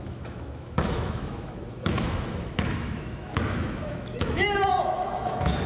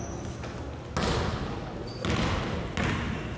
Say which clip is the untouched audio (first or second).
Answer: second